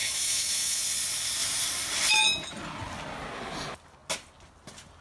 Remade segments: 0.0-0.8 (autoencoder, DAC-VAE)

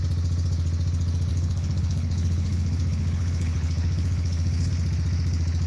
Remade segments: 1.3-4.7 (codec, HILCodec)

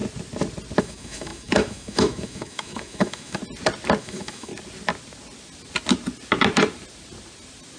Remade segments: 0.8-3.4 (autoencoder, DAC-VAE); 4.0-4.5